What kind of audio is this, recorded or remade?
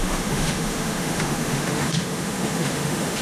remade